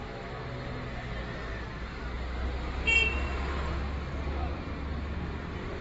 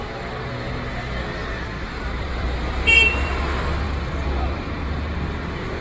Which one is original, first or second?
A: first